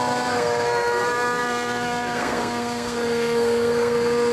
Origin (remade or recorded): remade